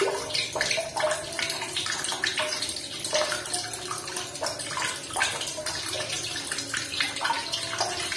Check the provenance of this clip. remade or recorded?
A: recorded